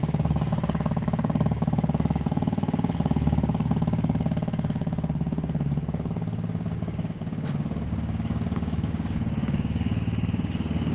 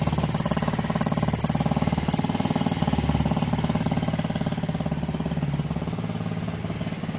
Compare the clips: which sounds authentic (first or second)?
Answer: second